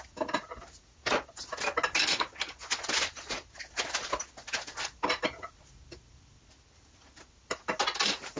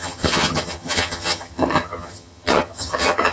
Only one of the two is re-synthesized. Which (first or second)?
second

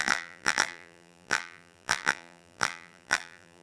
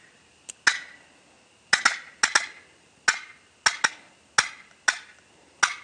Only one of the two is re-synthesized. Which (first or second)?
first